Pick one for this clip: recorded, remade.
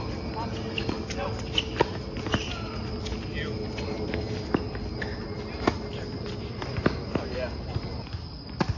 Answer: recorded